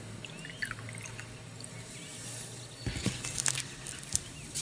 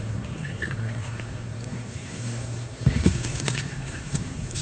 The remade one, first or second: second